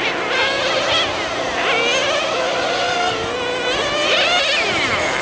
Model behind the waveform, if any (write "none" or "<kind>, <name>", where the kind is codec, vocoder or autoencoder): none